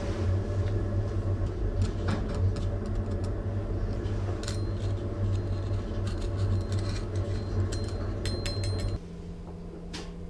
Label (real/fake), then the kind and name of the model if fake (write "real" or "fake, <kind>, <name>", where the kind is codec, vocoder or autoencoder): real